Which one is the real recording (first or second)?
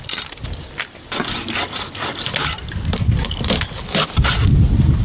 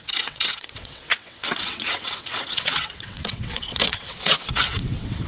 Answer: first